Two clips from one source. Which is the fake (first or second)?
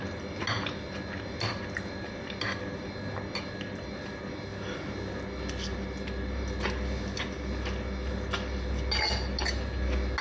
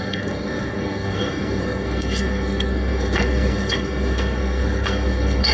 second